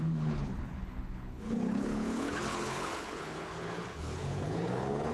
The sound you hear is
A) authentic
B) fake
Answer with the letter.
B